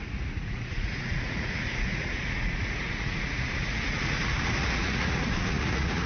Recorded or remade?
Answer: remade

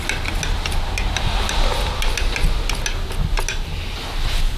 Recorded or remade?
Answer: recorded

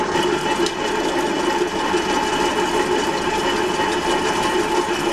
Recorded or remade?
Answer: recorded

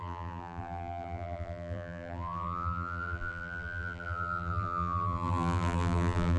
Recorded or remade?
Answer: remade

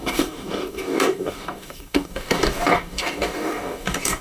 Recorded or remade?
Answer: remade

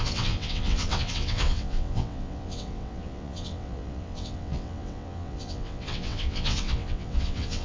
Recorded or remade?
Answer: remade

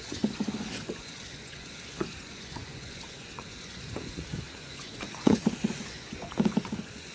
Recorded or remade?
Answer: remade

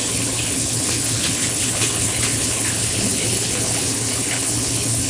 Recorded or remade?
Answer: remade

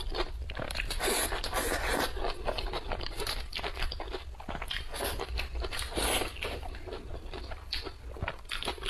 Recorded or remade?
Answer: recorded